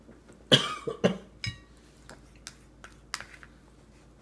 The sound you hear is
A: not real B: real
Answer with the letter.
B